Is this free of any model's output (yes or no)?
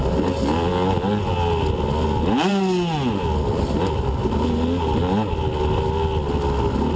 yes